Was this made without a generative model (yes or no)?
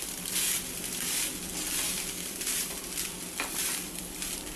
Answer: no